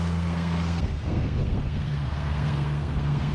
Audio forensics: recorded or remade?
remade